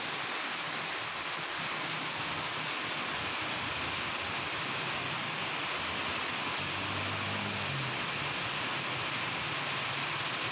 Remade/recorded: recorded